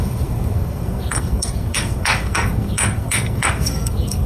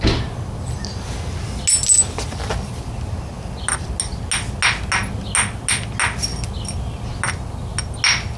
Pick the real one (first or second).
second